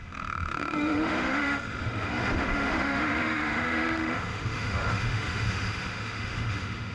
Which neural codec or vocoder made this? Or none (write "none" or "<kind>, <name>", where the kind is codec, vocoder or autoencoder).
autoencoder, DAC-VAE